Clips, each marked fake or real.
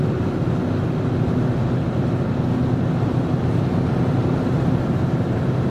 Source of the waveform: real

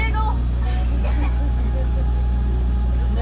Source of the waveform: real